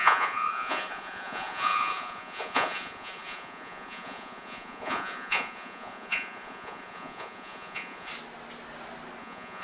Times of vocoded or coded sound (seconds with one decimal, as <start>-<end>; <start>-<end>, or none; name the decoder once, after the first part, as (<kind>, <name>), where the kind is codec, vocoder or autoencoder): 0.0-8.1 (vocoder, Vocos); 9.2-9.6